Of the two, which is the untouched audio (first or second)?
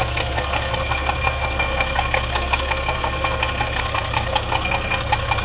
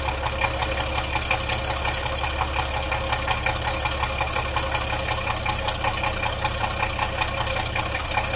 second